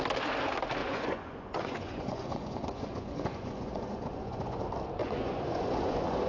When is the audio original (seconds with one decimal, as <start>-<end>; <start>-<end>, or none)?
0.0-0.8; 4.6-5.0